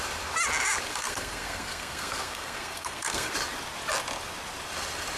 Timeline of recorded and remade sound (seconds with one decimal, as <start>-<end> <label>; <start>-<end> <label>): 0.0-0.9 recorded; 0.9-3.3 remade; 3.3-5.2 recorded